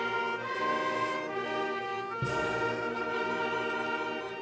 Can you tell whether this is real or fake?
real